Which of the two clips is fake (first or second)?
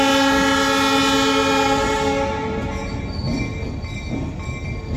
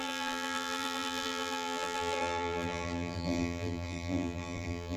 second